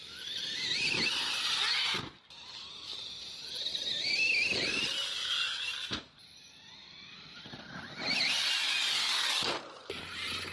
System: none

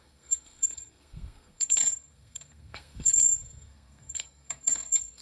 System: codec, SNAC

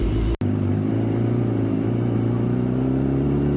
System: none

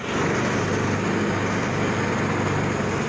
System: none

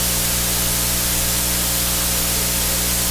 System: none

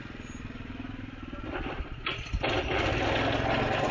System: none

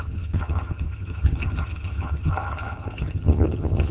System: vocoder, HiFi-GAN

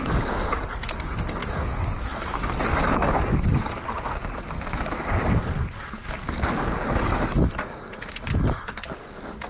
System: codec, DAC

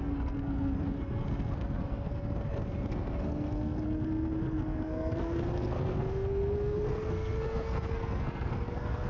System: codec, SNAC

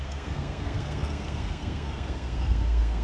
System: codec, SNAC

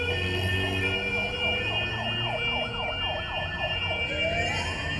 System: none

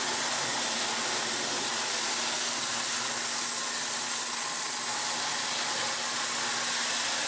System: none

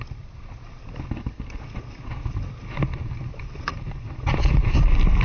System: none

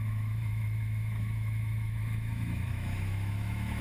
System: autoencoder, DAC-VAE